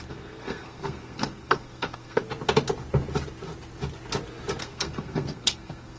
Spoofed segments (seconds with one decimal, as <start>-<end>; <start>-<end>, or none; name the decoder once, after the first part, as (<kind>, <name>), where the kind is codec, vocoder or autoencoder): 0.0-2.2 (codec, SNAC); 4.6-6.0